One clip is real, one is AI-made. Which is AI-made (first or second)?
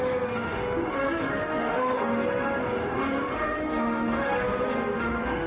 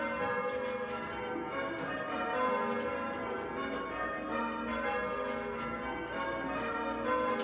first